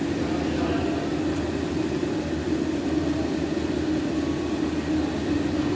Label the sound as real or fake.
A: real